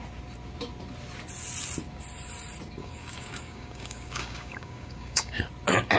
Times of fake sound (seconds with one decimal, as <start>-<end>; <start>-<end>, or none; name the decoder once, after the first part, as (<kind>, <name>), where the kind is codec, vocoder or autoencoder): 2.8-5.4 (codec, DAC)